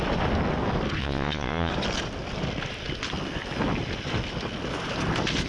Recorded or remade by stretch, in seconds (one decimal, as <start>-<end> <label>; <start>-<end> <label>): 0.0-1.0 recorded; 1.0-1.7 remade; 1.7-5.5 recorded